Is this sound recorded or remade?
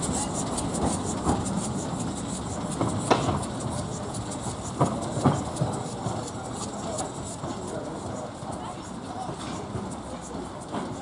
recorded